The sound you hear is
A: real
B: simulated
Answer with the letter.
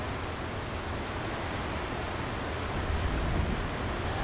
A